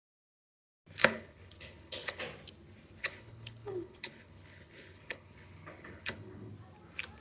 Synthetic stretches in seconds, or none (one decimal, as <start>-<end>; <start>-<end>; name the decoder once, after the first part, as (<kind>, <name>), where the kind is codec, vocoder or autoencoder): 1.0-2.2 (codec, HILCodec); 3.0-6.5